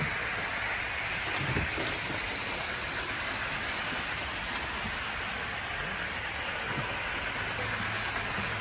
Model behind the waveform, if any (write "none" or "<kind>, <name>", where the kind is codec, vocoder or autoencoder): none